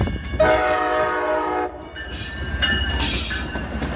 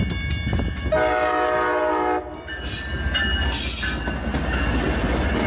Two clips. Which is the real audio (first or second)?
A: second